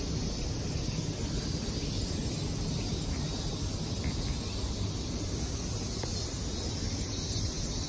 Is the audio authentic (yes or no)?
yes